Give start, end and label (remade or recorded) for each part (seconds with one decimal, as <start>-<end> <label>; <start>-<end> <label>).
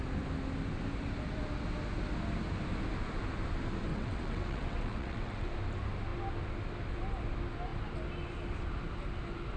0.0-3.9 recorded; 3.9-5.5 remade; 5.5-9.6 recorded